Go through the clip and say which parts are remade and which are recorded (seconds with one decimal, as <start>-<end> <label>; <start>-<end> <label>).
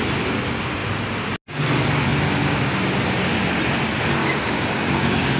0.0-4.2 recorded; 4.2-5.4 remade